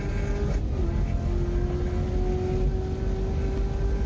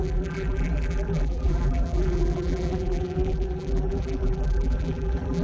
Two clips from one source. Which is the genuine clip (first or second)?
first